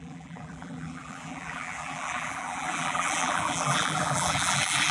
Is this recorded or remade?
remade